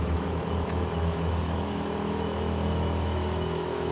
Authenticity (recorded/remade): remade